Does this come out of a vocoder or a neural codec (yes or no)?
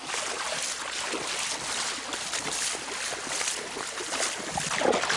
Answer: no